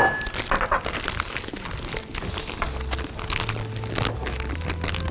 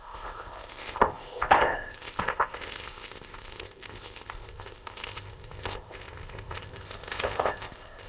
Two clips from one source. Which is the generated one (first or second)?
second